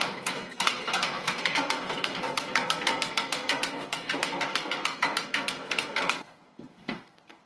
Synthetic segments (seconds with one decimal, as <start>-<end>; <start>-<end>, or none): 0.0-7.5

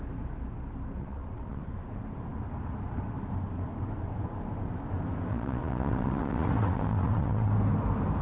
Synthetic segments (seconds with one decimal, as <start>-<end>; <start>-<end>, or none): 1.0-1.6; 5.3-7.5